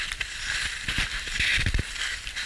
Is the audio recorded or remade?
recorded